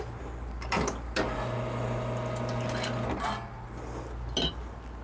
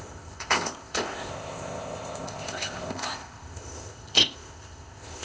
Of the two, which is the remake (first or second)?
second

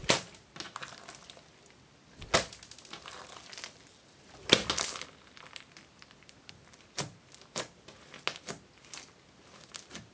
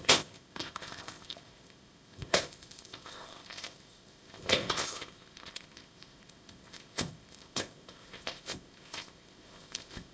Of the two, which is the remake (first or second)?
second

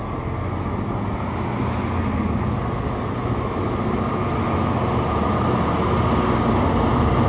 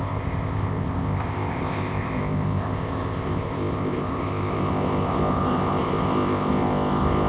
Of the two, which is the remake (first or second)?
second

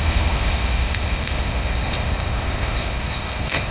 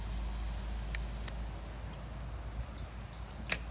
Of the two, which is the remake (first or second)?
first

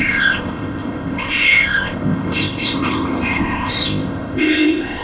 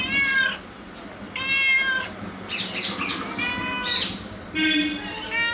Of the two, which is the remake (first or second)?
first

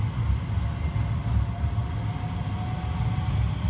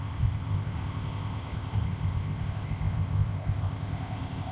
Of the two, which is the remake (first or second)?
second